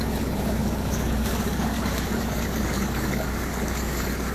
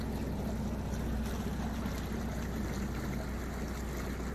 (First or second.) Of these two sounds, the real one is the second